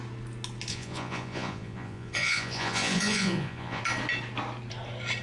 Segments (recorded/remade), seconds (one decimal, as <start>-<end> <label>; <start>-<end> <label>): 0.0-0.7 recorded; 0.7-3.8 remade; 3.8-5.2 recorded